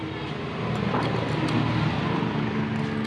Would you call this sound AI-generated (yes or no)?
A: no